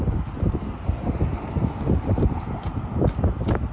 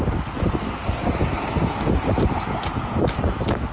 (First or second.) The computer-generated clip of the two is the first